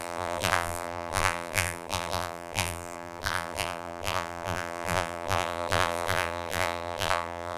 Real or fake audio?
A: fake